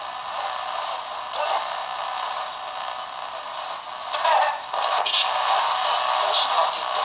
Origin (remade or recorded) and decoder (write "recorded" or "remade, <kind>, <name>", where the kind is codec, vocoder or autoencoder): recorded